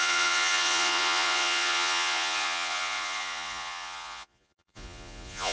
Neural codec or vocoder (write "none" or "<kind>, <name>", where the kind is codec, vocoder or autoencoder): vocoder, Vocos